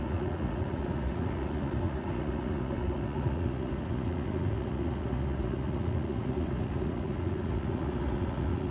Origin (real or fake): fake